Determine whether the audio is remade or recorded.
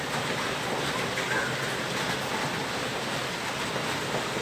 recorded